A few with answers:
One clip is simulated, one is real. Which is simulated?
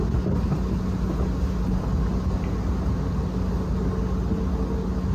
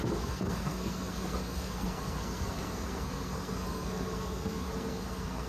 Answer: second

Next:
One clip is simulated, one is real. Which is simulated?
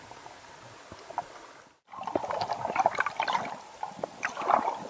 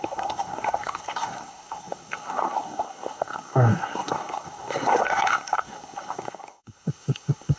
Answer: second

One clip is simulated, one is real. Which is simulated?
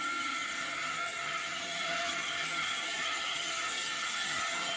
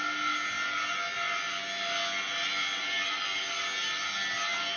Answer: first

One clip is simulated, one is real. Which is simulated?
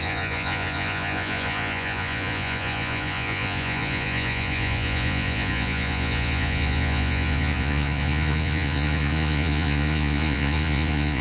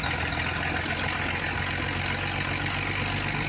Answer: first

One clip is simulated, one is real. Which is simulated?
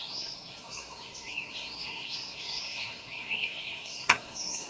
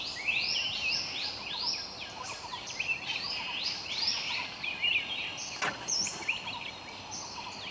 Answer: first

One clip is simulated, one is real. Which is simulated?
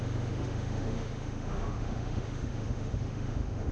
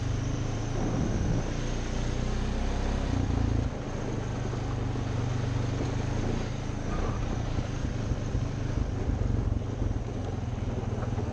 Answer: first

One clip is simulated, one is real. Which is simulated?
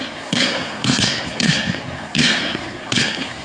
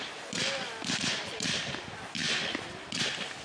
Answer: first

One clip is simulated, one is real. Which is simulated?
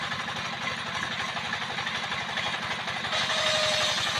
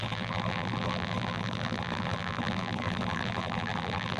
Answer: second